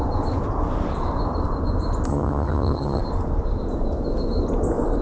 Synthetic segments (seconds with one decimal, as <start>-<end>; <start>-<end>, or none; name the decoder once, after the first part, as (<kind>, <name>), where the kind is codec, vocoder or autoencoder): 2.1-3.0 (vocoder, HiFi-GAN)